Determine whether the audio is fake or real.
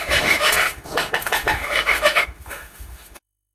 fake